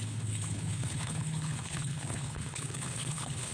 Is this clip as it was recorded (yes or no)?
no